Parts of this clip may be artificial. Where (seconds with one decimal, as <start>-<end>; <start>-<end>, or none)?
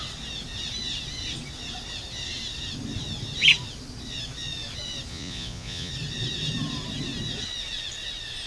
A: 5.1-5.9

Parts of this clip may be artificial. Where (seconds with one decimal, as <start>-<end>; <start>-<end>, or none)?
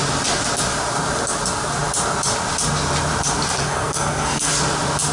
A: 3.6-4.5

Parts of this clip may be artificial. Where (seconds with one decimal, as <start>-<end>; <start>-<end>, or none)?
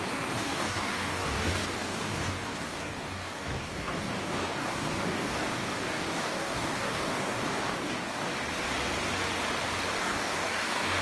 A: 0.0-8.3; 10.0-11.0